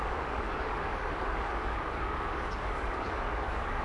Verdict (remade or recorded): remade